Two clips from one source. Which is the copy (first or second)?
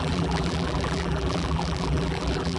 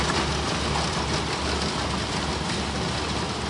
first